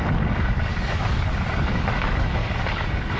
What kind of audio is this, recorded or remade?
remade